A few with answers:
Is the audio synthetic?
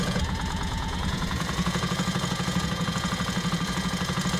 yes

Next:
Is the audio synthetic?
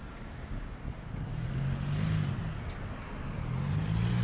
no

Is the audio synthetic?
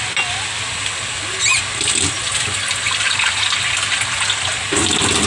no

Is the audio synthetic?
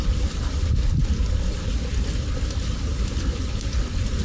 no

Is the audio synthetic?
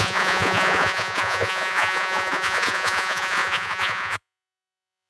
yes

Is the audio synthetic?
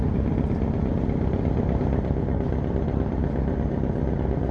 no